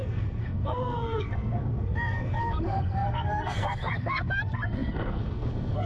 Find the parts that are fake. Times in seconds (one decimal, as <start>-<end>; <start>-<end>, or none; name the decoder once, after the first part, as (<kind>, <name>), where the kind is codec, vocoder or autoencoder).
0.0-5.9 (codec, SNAC)